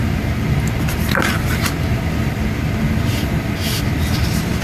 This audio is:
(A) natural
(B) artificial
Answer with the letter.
A